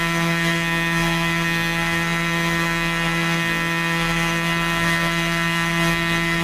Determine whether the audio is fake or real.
fake